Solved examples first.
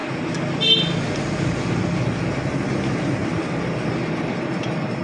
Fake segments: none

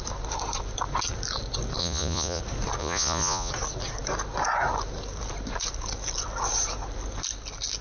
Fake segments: 1.8-2.4 (vocoder, Vocos); 2.8-3.5

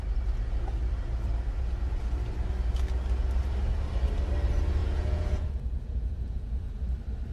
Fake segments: 4.8-6.8 (vocoder, Vocos)

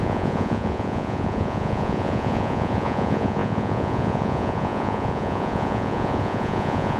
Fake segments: 0.0-7.0 (vocoder, Vocos)

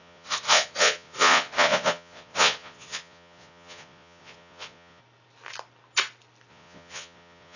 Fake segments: 0.0-5.0 (vocoder, Vocos); 6.5-7.6